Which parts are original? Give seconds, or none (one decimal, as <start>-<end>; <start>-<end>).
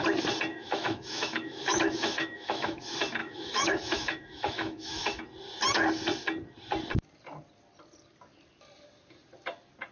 0.0-0.5; 2.8-3.2; 5.2-9.9